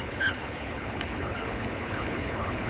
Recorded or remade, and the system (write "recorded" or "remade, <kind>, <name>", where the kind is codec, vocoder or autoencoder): remade, codec, HILCodec